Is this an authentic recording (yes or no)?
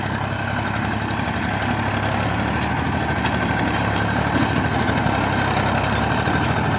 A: yes